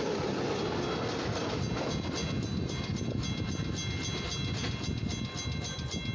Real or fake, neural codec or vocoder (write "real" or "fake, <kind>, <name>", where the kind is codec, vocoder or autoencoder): real